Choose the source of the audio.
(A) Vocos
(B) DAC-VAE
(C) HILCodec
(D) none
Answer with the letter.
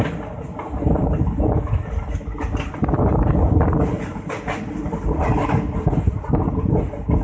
D